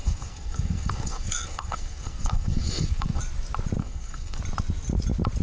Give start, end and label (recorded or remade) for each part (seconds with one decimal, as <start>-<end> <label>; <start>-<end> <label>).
0.0-3.2 remade; 3.2-3.8 recorded; 3.8-4.4 remade; 4.4-5.4 recorded